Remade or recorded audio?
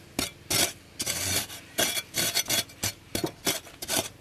recorded